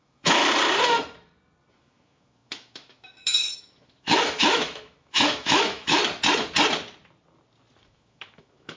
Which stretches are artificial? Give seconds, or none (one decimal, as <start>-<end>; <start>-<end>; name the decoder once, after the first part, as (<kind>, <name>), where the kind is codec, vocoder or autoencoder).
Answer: 0.0-0.4 (autoencoder, DAC-VAE); 1.7-6.0; 7.8-8.8